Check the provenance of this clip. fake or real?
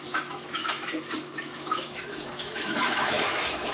fake